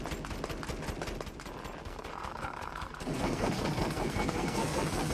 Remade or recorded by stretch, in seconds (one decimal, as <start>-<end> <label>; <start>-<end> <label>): 0.0-1.8 recorded; 1.8-5.1 remade